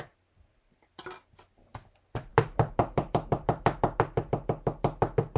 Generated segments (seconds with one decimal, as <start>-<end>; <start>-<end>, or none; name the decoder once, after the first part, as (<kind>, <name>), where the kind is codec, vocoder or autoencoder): 2.3-4.3 (vocoder, BigVGAN v2)